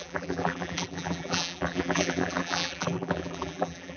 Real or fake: fake